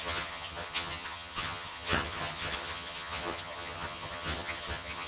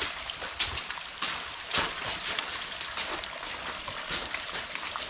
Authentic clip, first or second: second